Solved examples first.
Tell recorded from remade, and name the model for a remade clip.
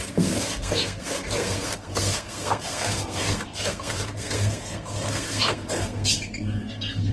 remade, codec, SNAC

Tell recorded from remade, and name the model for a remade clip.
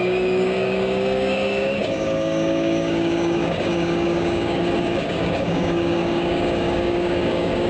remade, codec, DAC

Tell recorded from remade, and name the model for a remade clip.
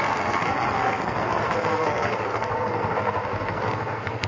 remade, codec, SNAC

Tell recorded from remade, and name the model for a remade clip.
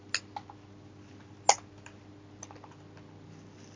recorded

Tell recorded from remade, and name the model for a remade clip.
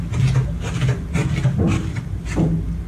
recorded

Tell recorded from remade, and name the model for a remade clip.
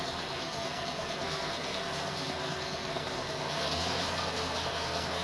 remade, codec, SNAC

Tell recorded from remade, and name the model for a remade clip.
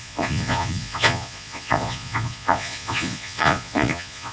remade, vocoder, Vocos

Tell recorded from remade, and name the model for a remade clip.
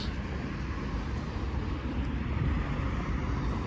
recorded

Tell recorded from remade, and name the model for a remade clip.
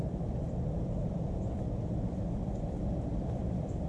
remade, vocoder, BigVGAN v2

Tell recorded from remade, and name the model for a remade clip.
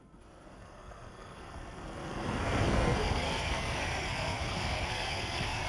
remade, codec, SNAC